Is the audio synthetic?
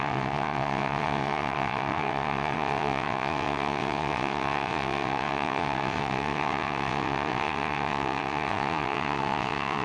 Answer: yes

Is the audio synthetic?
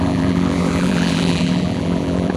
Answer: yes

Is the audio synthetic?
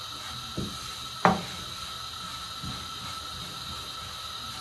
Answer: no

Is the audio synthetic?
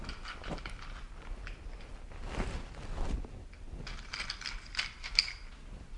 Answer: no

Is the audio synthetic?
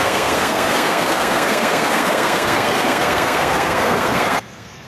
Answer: yes